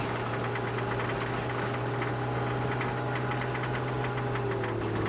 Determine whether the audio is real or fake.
real